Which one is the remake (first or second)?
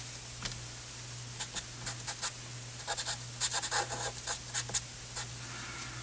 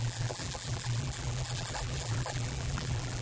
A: second